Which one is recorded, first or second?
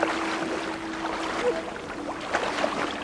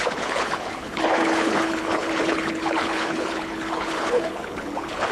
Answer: first